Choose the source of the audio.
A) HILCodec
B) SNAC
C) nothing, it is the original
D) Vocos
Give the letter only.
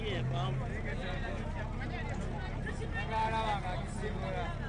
C